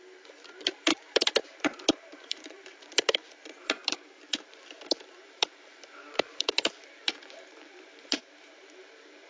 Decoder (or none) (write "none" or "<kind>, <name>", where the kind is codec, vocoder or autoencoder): vocoder, BigVGAN v2